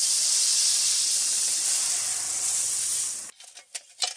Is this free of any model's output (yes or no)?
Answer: yes